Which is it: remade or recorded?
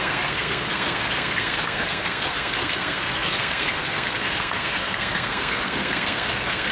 remade